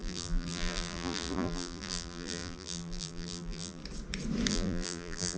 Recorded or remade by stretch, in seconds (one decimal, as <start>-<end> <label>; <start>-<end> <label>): 0.0-3.8 remade; 3.8-4.5 recorded; 4.5-5.4 remade